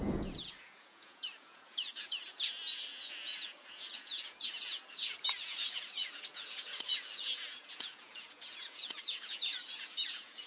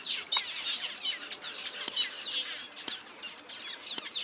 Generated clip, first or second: first